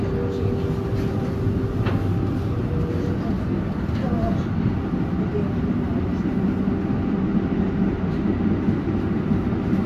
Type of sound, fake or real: real